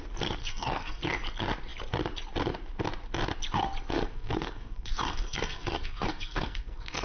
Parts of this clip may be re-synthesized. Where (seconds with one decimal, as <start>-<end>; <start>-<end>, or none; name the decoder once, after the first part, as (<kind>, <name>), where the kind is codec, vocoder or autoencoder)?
0.4-1.0 (codec, SNAC); 3.9-7.0